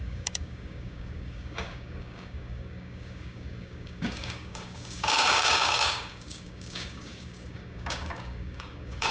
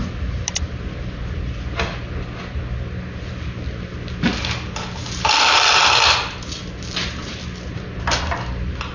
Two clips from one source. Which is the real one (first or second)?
second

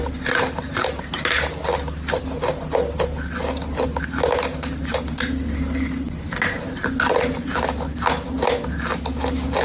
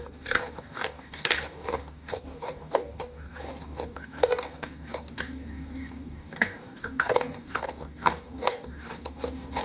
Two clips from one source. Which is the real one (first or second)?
first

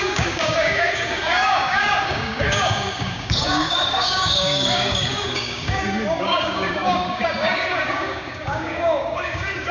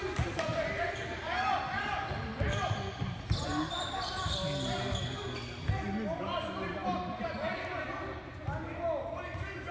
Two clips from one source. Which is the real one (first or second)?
second